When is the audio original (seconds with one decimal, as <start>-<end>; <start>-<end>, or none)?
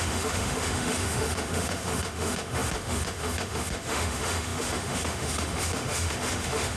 none